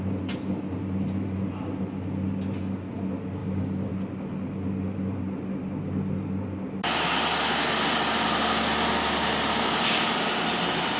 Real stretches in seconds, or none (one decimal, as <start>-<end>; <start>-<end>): 0.0-3.4; 3.9-11.0

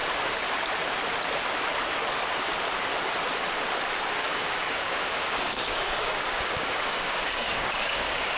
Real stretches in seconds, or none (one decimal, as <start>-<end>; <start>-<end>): 0.0-4.2

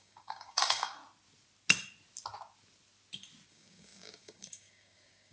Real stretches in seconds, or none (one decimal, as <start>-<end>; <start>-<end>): 1.0-3.5

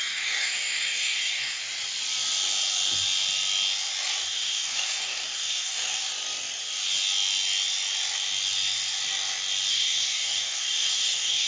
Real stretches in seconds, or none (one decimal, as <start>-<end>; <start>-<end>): 1.6-4.2; 6.1-9.7